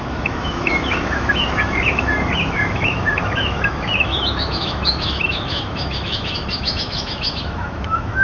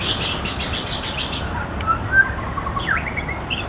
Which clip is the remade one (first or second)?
first